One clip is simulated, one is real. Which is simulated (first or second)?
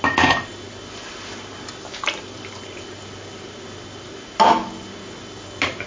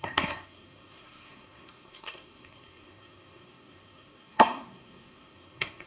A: second